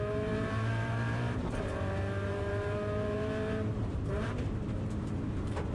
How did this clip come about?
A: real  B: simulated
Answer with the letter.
B